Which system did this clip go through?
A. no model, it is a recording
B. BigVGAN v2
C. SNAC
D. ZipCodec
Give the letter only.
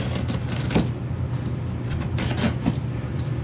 A